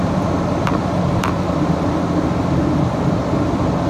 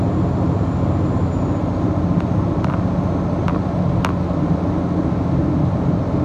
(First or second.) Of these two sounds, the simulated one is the first